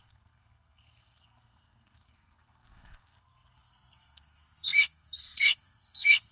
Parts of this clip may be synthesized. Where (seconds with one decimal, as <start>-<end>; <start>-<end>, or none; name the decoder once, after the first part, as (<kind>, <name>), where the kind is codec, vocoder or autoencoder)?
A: 0.0-6.3 (codec, SNAC)